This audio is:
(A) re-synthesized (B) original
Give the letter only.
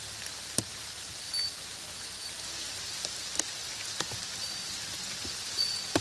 B